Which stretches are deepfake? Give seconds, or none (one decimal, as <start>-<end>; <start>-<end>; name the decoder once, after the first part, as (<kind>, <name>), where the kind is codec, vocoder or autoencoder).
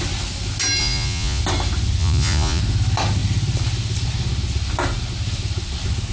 0.8-1.4 (vocoder, Vocos); 2.0-2.6